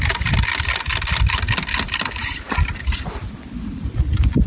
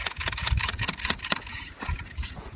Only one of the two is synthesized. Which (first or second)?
second